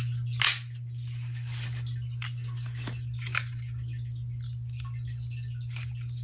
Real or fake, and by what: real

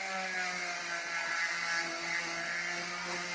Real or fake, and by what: real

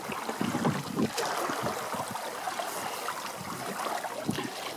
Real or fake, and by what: real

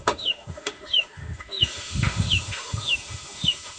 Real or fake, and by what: fake, autoencoder, DAC-VAE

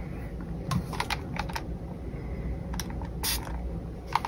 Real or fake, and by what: real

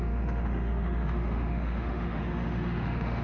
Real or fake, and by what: fake, autoencoder, DAC-VAE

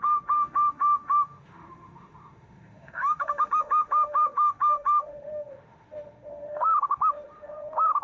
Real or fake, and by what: fake, autoencoder, DAC-VAE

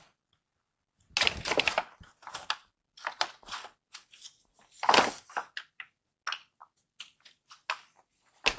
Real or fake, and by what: real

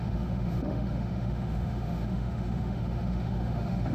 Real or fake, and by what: fake, autoencoder, DAC-VAE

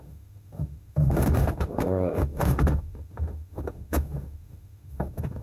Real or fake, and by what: fake, autoencoder, DAC-VAE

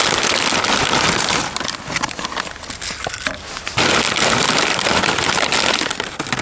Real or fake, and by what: real